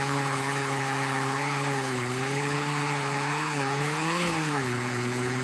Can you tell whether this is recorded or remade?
remade